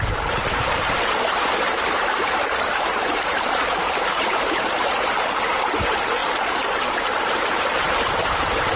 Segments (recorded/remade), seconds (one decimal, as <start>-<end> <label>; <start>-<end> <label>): 0.0-6.2 remade; 6.2-6.8 recorded; 6.8-8.8 remade